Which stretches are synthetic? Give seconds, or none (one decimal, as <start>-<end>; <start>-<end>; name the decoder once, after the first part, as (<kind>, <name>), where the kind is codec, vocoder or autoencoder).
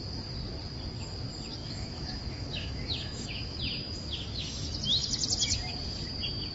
1.6-3.6 (autoencoder, DAC-VAE)